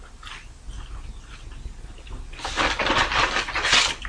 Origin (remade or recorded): recorded